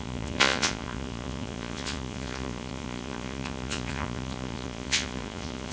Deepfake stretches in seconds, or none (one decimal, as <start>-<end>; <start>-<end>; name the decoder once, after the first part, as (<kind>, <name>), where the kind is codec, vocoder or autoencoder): 0.0-5.7 (vocoder, Vocos)